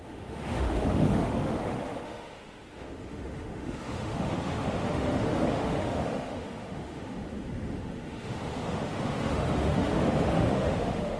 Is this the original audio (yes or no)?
no